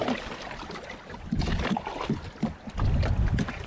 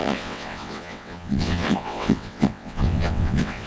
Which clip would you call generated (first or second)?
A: second